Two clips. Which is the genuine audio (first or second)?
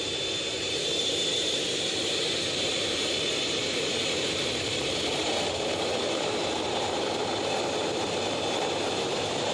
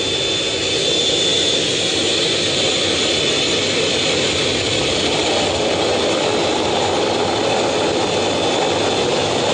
second